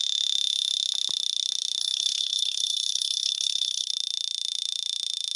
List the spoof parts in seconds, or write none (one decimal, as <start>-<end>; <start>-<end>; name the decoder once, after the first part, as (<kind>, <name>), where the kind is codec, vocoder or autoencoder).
1.8-3.9 (codec, SNAC)